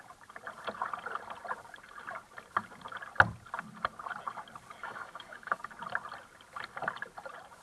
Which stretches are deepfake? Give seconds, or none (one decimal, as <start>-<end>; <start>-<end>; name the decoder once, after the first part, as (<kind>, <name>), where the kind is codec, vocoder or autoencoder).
4.8-5.6 (autoencoder, DAC-VAE)